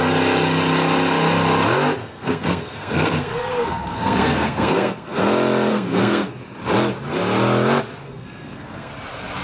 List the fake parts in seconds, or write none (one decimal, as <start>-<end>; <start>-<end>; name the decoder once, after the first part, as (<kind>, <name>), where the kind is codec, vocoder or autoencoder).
2.0-5.2 (codec, SNAC); 5.7-6.4; 8.0-8.9